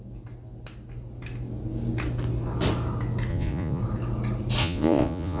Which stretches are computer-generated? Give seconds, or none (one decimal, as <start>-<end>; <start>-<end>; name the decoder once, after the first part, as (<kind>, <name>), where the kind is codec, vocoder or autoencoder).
3.3-3.8 (vocoder, Vocos); 4.6-5.4